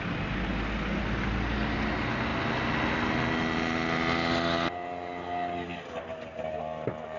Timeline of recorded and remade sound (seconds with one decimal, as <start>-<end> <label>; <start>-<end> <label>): 0.0-7.2 recorded